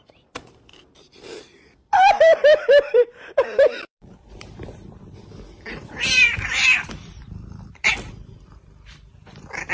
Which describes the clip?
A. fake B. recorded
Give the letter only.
A